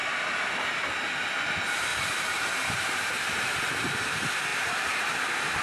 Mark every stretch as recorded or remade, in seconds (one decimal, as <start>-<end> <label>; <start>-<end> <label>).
0.0-1.9 recorded; 1.9-3.1 remade; 3.1-4.5 recorded; 4.5-5.1 remade; 5.1-5.6 recorded